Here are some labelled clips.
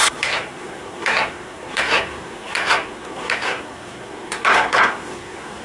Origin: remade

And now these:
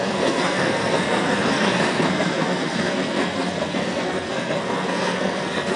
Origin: remade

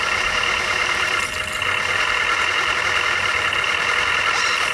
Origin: recorded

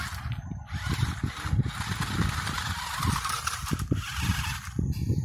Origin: recorded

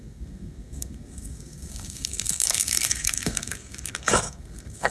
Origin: remade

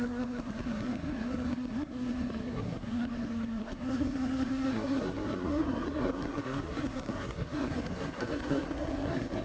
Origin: remade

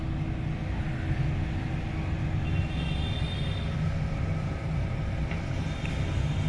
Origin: recorded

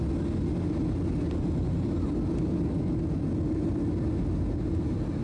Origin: recorded